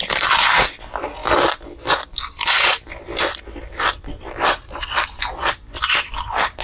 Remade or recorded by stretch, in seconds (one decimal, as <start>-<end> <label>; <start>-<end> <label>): 0.0-1.2 recorded; 1.2-5.2 remade; 5.2-6.6 recorded